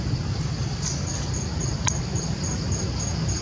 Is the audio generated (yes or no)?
no